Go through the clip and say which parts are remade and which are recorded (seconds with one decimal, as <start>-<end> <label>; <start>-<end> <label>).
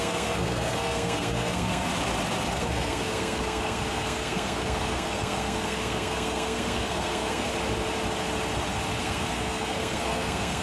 0.0-1.9 remade; 1.9-2.6 recorded; 2.6-7.5 remade; 7.5-9.0 recorded; 9.0-10.6 remade